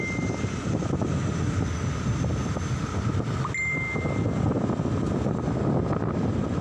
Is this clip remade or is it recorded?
recorded